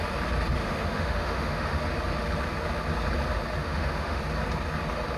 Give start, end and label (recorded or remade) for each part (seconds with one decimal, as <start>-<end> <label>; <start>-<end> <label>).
0.0-0.6 recorded; 0.6-1.8 remade; 1.8-3.6 recorded; 3.6-4.2 remade; 4.2-5.2 recorded